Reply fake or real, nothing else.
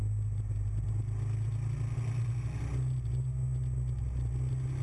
real